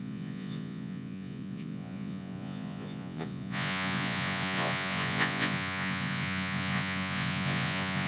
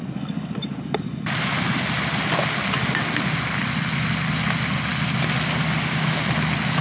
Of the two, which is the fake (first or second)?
first